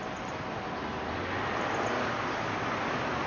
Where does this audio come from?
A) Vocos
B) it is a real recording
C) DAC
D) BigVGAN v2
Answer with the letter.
B